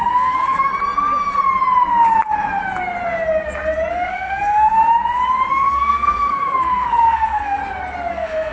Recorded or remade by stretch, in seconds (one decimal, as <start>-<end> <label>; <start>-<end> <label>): 0.0-0.7 remade; 0.7-3.9 recorded; 3.9-4.8 remade; 4.8-5.5 recorded; 5.5-7.6 remade; 7.6-8.1 recorded; 8.1-8.5 remade